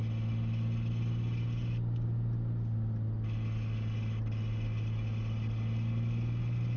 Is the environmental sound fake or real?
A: real